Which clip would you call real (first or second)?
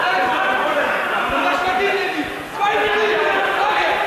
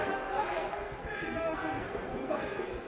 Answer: first